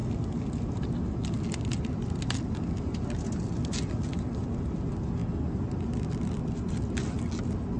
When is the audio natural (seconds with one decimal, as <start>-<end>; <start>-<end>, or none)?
0.0-7.8